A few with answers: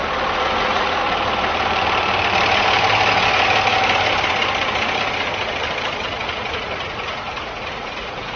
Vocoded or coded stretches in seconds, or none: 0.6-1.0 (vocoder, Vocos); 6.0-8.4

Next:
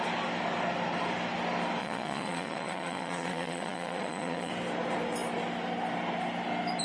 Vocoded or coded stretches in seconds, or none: 1.8-4.5 (vocoder, Vocos)

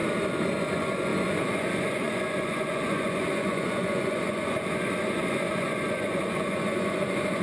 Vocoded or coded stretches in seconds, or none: 0.6-7.4 (vocoder, Vocos)

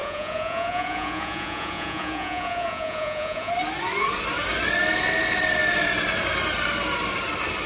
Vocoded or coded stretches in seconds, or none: 0.0-3.5 (vocoder, Vocos)

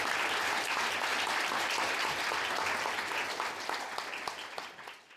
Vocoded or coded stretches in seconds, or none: none